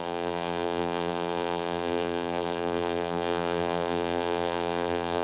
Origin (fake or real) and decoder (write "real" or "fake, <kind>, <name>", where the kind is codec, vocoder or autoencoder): fake, vocoder, BigVGAN v2